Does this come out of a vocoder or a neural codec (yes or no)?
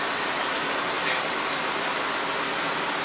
no